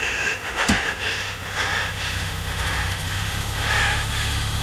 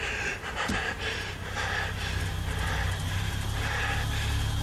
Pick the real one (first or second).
second